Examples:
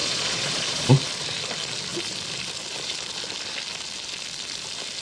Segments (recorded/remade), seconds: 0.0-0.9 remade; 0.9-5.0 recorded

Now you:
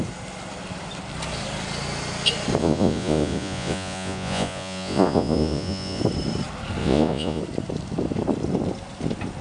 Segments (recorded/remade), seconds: 0.0-2.6 recorded; 2.6-6.0 remade; 6.0-6.8 recorded; 6.8-7.4 remade; 7.4-9.4 recorded

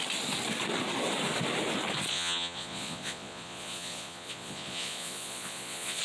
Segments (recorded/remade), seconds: 0.0-2.1 recorded; 2.1-6.0 remade

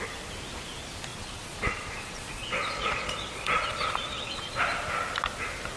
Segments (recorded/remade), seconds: 0.0-1.1 recorded; 1.1-4.6 remade; 4.6-5.8 recorded

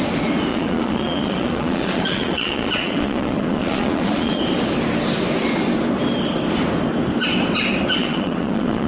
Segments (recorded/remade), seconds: 0.0-0.5 recorded; 0.5-4.4 remade; 4.4-8.0 recorded; 8.0-8.9 remade

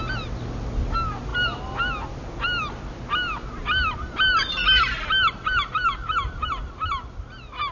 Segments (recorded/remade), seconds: 0.0-7.7 recorded

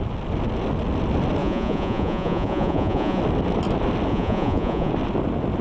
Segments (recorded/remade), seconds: 0.0-1.4 recorded; 1.4-3.2 remade; 3.2-4.1 recorded; 4.1-4.9 remade; 4.9-5.6 recorded

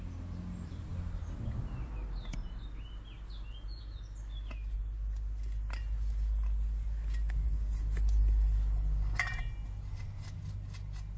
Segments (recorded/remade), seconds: 0.0-11.2 recorded